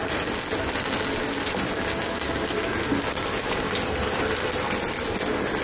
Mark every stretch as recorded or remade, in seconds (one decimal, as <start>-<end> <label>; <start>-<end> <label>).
0.0-5.6 recorded